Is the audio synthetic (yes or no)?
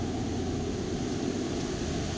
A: no